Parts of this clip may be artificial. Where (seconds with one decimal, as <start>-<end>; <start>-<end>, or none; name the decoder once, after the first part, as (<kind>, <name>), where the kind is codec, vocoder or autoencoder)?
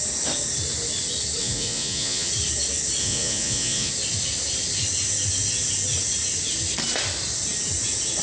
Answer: 1.4-2.3 (vocoder, Vocos); 3.0-3.9